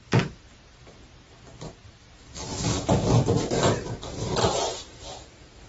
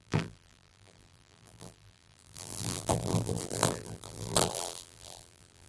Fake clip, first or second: second